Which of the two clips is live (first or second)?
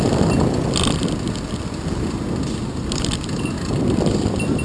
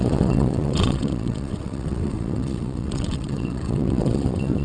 first